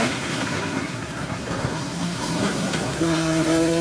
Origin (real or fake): fake